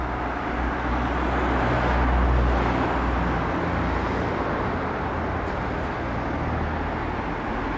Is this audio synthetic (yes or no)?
no